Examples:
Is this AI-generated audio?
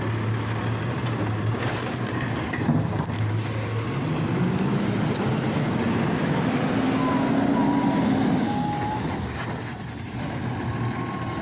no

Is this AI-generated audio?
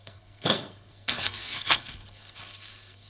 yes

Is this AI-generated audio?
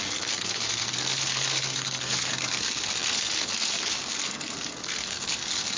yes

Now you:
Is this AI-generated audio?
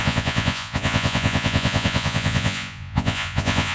yes